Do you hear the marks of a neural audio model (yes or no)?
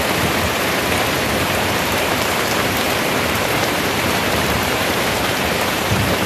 yes